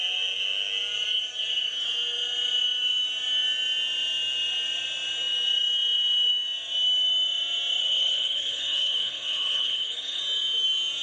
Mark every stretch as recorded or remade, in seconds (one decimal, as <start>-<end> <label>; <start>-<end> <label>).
0.0-7.8 recorded; 7.8-10.2 remade; 10.2-11.0 recorded